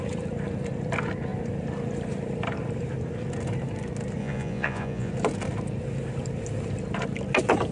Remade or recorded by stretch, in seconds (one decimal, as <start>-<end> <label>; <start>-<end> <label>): 0.0-4.2 recorded; 4.2-5.1 remade; 5.1-7.7 recorded